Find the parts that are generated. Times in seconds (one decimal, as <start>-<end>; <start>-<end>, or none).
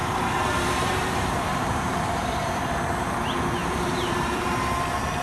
0.0-3.1; 3.6-4.7